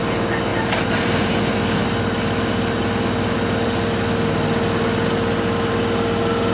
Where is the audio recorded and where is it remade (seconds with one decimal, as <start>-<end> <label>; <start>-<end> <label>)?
0.0-0.5 recorded; 0.5-1.4 remade; 1.4-6.5 recorded